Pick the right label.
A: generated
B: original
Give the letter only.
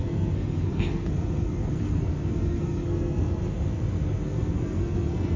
A